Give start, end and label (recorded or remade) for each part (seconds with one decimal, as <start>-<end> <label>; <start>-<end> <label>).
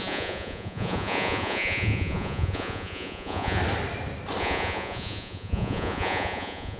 0.0-3.6 remade; 3.6-4.4 recorded; 4.4-6.8 remade